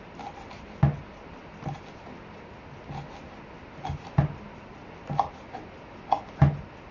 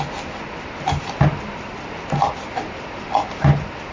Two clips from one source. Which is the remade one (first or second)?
second